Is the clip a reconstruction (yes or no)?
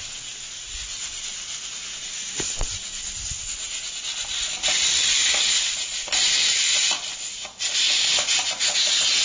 no